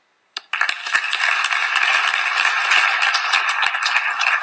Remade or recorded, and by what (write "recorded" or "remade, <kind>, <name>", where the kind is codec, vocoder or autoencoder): recorded